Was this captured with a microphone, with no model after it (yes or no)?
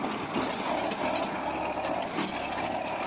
yes